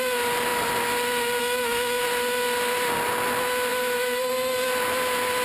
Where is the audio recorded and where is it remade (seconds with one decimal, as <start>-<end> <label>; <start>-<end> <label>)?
0.0-3.7 recorded; 3.7-4.3 remade; 4.3-5.4 recorded